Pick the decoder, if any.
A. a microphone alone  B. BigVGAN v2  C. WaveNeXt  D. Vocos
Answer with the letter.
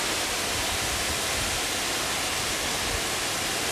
A